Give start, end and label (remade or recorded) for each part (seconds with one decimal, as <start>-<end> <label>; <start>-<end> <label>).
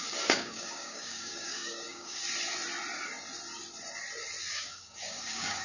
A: 0.0-2.2 remade; 2.2-4.5 recorded; 4.5-5.6 remade